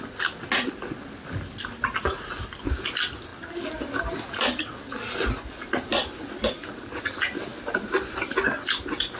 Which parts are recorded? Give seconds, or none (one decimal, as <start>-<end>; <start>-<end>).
0.0-9.2